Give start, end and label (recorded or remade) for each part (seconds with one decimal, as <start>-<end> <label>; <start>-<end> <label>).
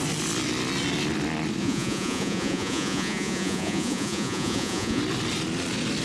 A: 0.0-1.6 recorded; 1.6-5.0 remade; 5.0-6.0 recorded